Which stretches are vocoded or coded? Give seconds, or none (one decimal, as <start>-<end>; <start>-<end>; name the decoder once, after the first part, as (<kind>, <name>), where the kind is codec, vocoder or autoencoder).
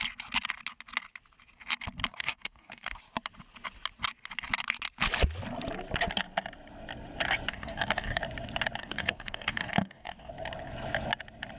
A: 2.1-3.0 (codec, DAC); 7.5-8.2; 8.8-10.3